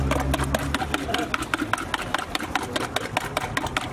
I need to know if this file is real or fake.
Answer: real